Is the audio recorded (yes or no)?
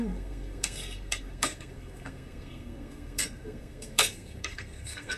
no